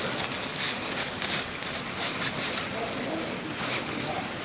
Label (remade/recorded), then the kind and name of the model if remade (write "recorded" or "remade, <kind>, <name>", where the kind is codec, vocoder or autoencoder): recorded